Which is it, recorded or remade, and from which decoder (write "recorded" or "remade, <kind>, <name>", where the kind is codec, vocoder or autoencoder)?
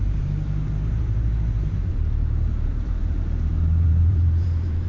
remade, vocoder, BigVGAN v2